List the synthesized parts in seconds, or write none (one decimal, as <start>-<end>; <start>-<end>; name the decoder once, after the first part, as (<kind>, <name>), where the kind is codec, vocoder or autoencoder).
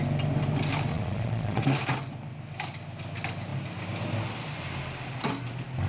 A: 0.9-1.6 (vocoder, Vocos)